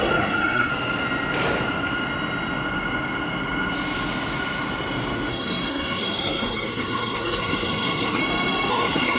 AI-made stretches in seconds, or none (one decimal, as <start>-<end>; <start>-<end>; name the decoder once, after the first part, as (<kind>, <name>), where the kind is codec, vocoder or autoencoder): 0.0-0.7 (codec, SNAC); 5.3-8.2; 8.7-9.2